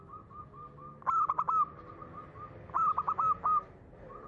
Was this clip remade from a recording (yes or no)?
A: yes